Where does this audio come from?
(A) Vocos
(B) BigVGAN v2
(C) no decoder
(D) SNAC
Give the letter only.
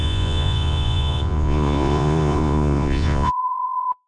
A